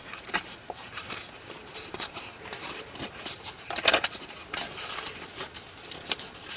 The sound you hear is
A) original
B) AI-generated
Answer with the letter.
B